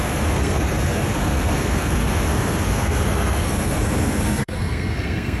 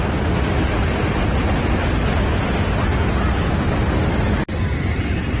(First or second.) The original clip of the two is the second